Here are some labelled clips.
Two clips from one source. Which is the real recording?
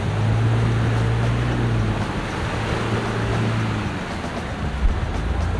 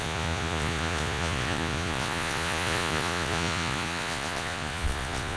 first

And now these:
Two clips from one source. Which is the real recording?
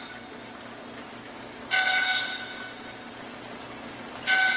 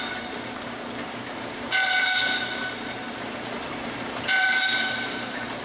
first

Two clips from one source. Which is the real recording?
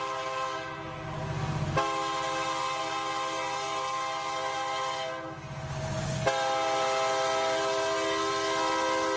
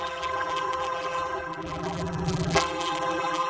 first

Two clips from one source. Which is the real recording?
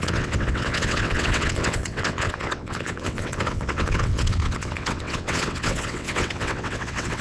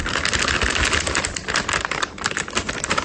second